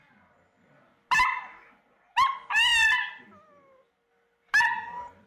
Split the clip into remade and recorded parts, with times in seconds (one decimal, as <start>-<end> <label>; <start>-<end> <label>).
0.0-5.3 recorded

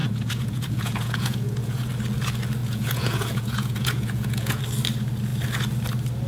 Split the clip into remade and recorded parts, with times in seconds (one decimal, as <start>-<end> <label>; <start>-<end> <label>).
0.0-1.9 remade; 1.9-2.6 recorded; 2.6-4.6 remade; 4.6-6.3 recorded

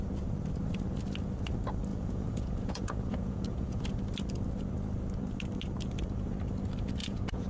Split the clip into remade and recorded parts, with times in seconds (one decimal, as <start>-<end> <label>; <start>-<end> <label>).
0.0-1.9 recorded; 1.9-3.8 remade; 3.8-7.0 recorded; 7.0-7.5 remade

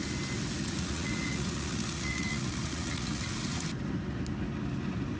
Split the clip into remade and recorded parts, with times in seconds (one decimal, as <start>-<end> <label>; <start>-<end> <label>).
0.0-0.6 recorded; 0.6-3.7 remade; 3.7-5.2 recorded

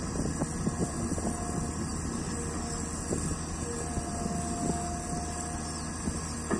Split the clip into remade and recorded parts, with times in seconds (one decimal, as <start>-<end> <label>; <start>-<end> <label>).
0.0-6.6 recorded

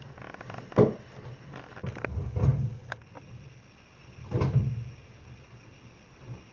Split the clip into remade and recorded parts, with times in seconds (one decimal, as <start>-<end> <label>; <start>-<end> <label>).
0.0-6.5 recorded

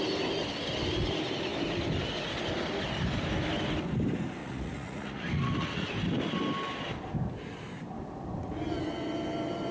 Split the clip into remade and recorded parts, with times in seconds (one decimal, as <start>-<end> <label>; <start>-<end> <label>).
0.0-4.4 recorded; 4.4-5.9 remade; 5.9-9.7 recorded